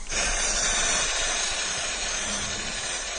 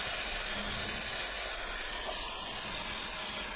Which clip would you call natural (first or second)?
second